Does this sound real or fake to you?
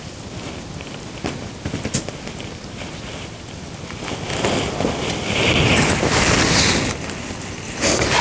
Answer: real